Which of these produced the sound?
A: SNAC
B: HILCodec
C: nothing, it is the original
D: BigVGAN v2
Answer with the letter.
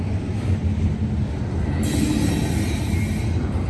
C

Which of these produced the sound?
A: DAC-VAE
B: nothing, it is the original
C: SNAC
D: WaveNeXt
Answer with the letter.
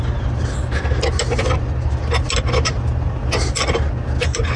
B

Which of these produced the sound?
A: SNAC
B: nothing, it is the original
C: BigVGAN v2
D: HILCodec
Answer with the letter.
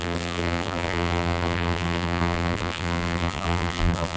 C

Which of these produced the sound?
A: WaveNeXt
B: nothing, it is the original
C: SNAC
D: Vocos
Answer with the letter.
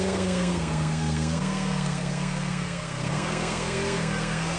C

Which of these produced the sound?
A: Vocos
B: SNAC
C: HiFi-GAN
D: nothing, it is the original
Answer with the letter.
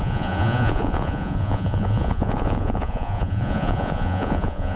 A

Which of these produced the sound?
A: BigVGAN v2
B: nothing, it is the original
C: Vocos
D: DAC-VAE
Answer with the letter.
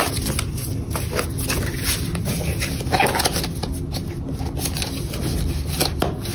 B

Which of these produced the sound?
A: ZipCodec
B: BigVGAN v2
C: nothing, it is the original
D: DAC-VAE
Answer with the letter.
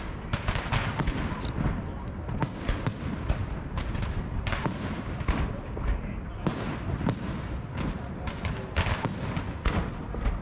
C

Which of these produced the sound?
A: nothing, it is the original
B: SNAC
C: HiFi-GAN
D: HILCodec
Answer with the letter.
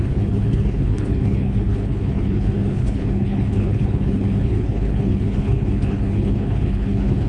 D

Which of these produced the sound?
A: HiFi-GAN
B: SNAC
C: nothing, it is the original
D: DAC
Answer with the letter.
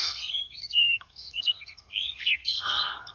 B